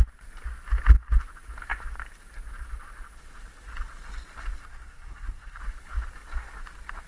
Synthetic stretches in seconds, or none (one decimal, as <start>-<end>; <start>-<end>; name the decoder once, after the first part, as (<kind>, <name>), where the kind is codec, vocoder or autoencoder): 4.6-5.6 (codec, SNAC)